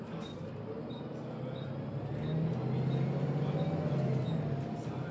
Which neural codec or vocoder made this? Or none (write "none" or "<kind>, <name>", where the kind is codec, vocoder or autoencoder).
none